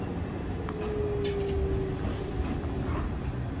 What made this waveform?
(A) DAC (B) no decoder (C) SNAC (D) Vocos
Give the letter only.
B